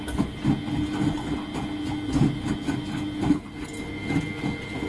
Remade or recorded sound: recorded